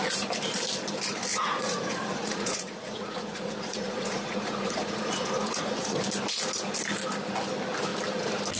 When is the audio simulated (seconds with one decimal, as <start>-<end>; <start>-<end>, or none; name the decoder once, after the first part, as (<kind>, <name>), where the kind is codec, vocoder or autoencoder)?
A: 1.3-6.0 (vocoder, Vocos)